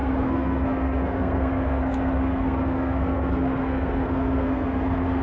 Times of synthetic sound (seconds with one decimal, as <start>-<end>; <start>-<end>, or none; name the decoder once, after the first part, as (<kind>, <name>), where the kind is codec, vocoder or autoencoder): 0.0-5.2 (codec, SNAC)